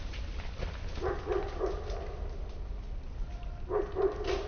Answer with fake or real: real